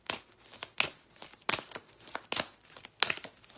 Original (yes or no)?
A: yes